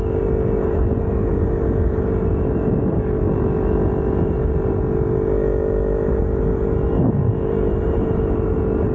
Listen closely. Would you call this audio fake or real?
real